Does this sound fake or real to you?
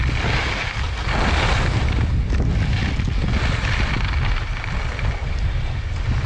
real